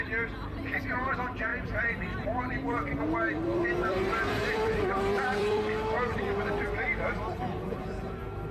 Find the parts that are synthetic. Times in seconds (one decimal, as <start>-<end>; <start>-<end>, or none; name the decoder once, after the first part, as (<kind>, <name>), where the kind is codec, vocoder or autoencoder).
1.5-5.6 (vocoder, BigVGAN v2)